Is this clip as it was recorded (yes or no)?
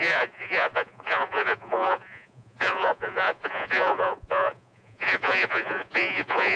no